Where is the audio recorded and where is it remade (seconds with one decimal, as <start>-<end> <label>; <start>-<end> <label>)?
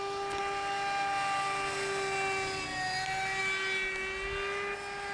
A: 0.0-5.1 recorded